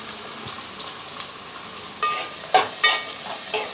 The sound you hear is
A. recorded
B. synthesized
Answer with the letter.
B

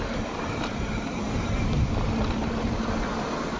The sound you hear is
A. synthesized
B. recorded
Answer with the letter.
B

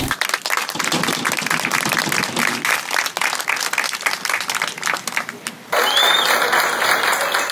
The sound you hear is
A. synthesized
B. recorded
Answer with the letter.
B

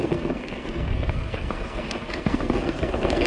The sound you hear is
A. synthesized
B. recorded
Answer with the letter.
A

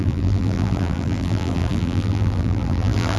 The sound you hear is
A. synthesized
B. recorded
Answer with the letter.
A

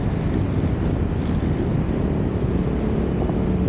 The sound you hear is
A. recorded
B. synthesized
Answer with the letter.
A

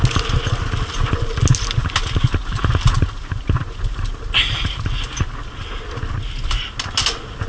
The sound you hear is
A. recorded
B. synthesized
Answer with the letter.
A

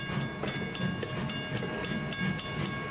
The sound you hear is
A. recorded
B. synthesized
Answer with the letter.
A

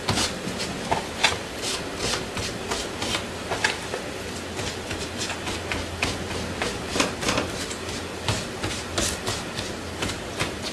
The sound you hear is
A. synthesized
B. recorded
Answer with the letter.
B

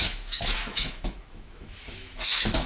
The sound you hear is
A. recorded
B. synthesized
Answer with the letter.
B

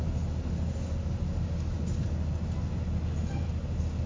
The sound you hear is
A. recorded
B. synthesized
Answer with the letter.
A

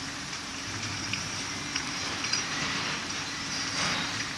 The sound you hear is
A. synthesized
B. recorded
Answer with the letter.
A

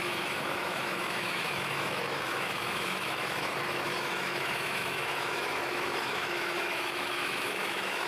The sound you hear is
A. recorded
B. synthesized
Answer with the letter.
B